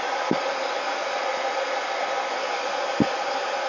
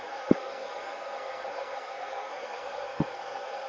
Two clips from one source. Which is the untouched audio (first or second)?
first